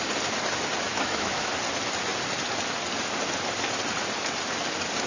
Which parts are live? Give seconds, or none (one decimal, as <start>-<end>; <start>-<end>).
0.0-0.9; 1.5-5.1